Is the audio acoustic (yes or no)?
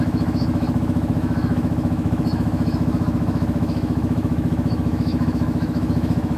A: no